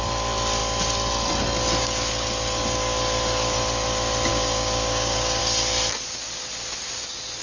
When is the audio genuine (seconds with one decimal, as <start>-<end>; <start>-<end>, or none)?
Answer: 0.0-4.3; 5.4-7.4